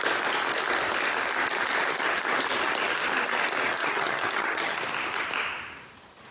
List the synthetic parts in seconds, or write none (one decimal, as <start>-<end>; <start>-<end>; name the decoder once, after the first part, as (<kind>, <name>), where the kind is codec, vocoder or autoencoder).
3.8-4.8 (vocoder, HiFi-GAN)